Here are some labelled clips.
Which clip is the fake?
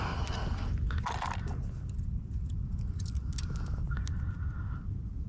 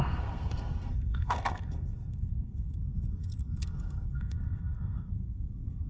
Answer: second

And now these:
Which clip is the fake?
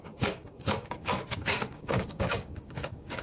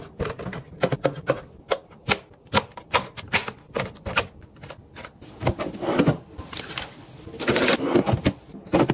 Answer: first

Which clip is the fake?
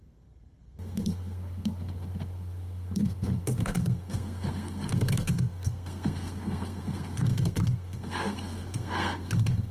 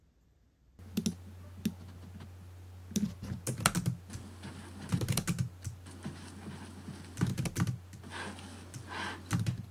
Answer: first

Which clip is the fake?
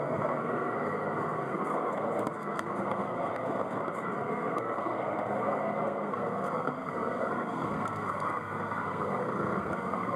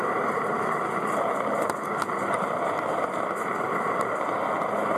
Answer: first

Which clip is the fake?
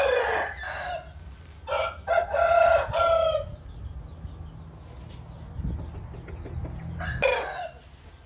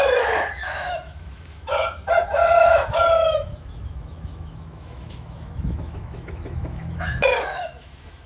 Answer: second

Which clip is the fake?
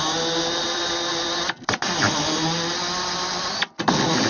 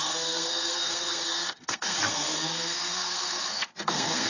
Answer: second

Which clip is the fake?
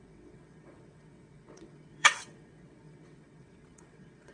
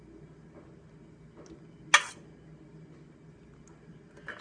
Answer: first